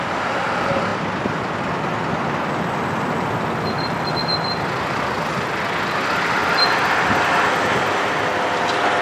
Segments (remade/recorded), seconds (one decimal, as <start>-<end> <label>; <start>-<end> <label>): 0.0-9.0 recorded